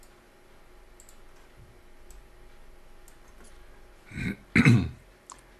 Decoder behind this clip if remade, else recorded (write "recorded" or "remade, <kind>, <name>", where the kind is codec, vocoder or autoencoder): recorded